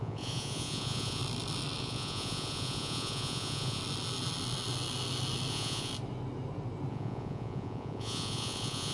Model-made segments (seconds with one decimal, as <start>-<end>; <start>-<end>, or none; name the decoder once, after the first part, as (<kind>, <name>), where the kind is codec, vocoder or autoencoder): 0.0-1.2 (vocoder, Vocos); 1.8-3.8; 5.5-5.9; 6.9-8.9